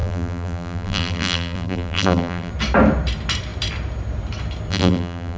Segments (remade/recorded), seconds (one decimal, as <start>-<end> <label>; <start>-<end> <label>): 0.0-2.5 remade; 2.5-4.7 recorded; 4.7-5.4 remade